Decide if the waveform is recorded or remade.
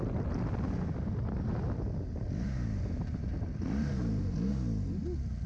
recorded